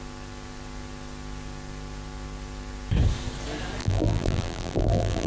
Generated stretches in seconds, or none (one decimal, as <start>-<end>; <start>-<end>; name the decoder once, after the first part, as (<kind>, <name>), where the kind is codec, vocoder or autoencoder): 3.8-5.3 (vocoder, BigVGAN v2)

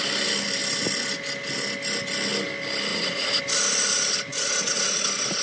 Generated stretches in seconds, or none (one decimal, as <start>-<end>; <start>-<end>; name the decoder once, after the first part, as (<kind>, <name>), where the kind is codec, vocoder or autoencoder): 2.9-3.4 (vocoder, Vocos); 4.3-5.0